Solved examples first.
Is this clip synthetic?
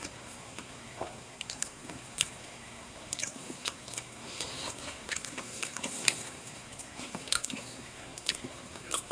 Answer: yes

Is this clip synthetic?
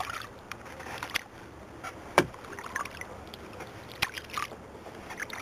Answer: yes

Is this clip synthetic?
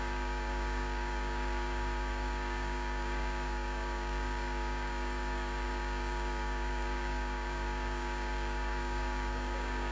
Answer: yes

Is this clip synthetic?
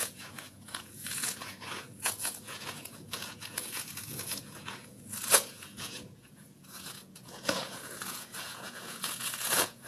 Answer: yes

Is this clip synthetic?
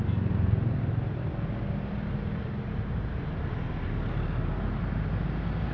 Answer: no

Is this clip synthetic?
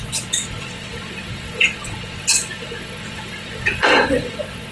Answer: yes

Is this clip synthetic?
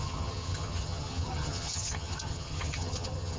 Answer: yes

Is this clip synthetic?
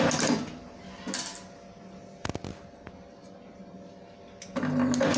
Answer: no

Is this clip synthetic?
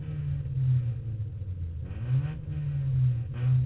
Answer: no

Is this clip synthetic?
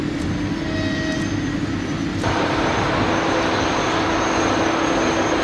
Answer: no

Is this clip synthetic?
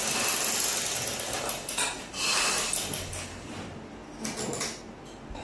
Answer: no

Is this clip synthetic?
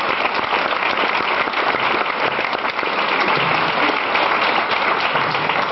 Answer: no